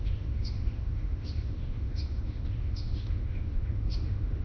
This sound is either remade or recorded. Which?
remade